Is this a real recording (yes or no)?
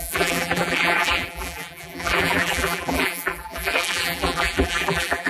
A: no